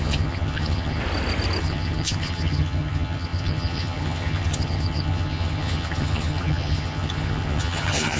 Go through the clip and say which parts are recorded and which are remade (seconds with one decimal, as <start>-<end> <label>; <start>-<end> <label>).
0.0-1.0 remade; 1.0-1.6 recorded; 1.6-8.2 remade